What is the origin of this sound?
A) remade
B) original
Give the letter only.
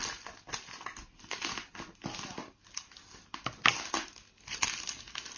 B